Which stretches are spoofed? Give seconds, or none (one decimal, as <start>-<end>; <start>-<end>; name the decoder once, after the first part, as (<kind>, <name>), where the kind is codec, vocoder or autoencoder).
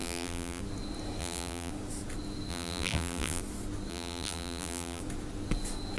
0.0-0.6 (vocoder, BigVGAN v2); 1.2-1.7; 2.5-3.4; 3.9-5.0